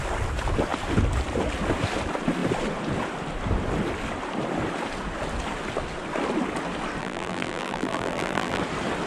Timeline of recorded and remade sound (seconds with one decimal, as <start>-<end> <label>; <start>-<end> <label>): 0.0-7.0 recorded; 7.0-8.6 remade; 8.6-9.1 recorded